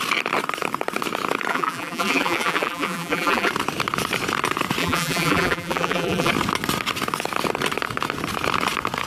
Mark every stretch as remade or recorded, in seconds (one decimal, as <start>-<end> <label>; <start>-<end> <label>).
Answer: 0.0-1.5 recorded; 1.5-3.5 remade; 3.5-4.8 recorded; 4.8-6.3 remade; 6.3-9.1 recorded